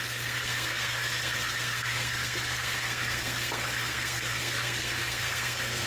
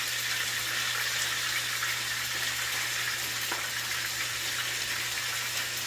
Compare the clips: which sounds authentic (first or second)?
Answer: second